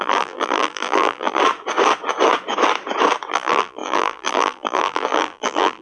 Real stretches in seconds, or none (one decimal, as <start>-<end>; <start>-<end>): 1.4-3.3